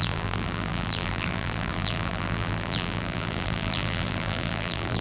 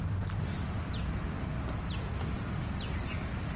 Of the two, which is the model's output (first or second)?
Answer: first